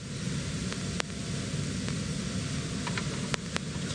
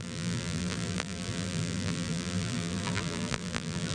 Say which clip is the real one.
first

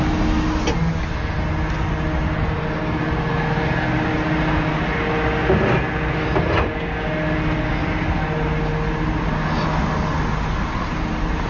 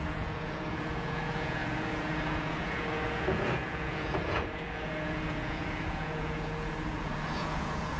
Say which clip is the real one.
first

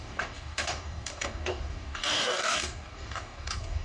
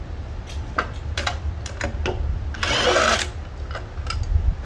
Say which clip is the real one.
second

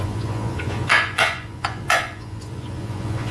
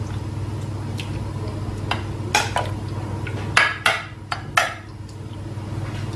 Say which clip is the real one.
second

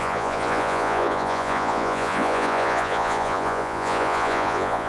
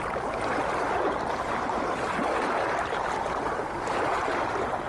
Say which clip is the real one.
second